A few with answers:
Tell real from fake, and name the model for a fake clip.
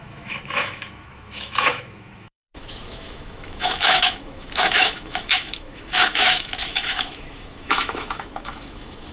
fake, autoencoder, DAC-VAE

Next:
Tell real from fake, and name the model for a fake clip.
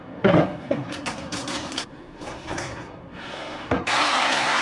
fake, codec, SNAC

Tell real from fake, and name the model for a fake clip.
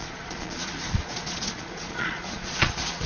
fake, vocoder, Vocos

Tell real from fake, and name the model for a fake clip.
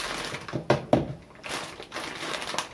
real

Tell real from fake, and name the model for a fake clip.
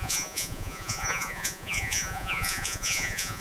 fake, vocoder, Vocos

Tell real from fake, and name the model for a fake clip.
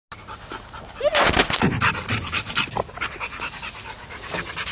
real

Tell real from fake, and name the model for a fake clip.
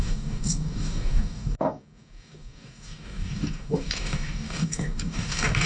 fake, codec, DAC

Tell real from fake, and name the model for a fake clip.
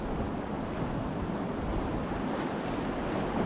real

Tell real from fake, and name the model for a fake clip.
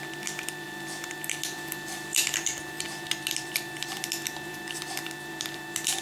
fake, vocoder, BigVGAN v2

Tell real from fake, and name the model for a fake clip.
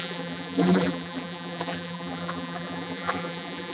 fake, vocoder, BigVGAN v2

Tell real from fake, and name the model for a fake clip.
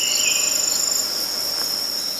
real